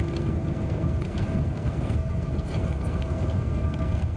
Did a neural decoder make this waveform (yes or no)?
yes